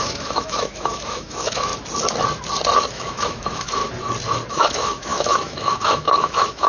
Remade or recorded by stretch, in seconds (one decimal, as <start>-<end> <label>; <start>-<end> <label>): 0.0-1.7 remade; 1.7-2.9 recorded; 2.9-3.8 remade; 3.8-4.5 recorded; 4.5-6.7 remade

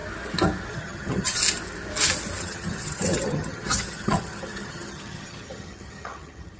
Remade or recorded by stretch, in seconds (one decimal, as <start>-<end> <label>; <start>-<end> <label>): 0.0-0.7 recorded; 0.7-1.4 remade; 1.4-2.4 recorded; 2.4-6.6 remade

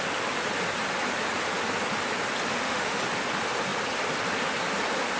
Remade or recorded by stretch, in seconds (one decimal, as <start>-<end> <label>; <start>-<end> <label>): 0.0-2.5 recorded; 2.5-3.0 remade; 3.0-5.2 recorded

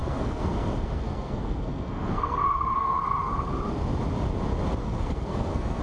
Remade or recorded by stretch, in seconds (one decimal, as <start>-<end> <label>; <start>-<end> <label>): 0.0-3.5 remade; 3.5-4.8 recorded; 4.8-5.8 remade

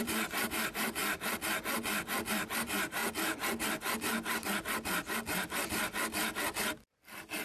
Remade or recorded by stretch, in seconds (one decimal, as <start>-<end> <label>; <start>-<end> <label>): 0.0-1.0 remade; 1.0-2.6 recorded; 2.6-3.0 remade; 3.0-7.4 recorded

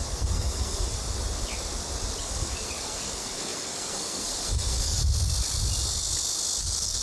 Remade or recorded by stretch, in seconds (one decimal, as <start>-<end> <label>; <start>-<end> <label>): 0.0-1.0 remade; 1.0-2.2 recorded; 2.2-5.0 remade; 5.0-6.6 recorded; 6.6-7.0 remade